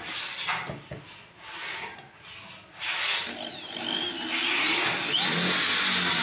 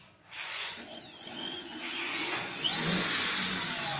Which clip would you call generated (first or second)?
second